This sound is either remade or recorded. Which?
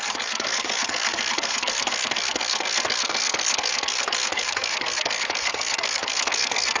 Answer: remade